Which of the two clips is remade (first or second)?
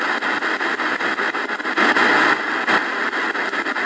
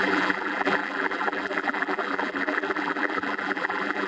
second